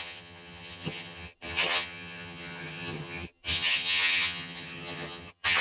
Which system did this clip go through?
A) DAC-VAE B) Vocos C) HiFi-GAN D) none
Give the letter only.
C